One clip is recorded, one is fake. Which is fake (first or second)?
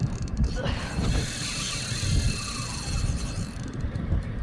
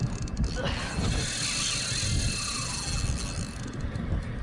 first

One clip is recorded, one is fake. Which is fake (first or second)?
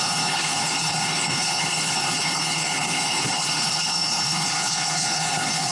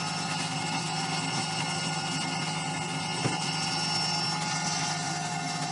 first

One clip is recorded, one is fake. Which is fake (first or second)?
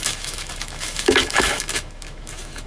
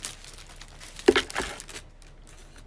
first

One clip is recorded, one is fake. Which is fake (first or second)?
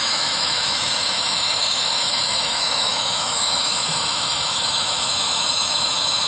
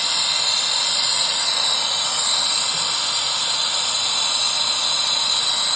first